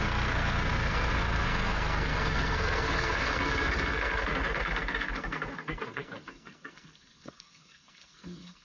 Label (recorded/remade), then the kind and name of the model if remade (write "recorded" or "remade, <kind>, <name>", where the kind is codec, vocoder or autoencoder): remade, codec, SNAC